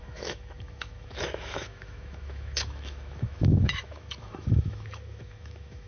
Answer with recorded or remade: remade